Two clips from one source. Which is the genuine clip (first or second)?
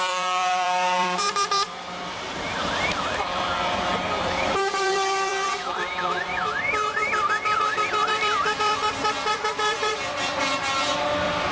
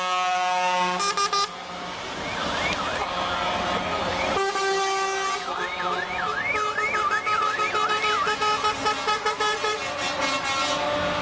second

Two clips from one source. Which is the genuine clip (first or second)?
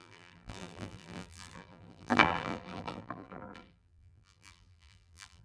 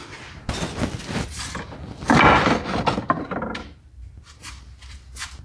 second